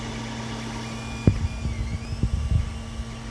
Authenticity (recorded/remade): recorded